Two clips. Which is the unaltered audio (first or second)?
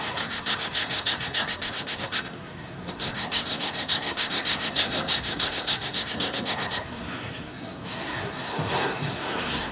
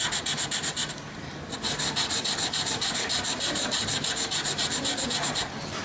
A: second